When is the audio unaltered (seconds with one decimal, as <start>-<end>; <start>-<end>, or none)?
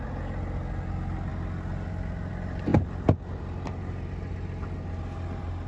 0.0-5.7